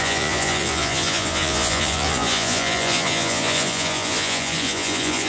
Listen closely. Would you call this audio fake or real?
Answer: fake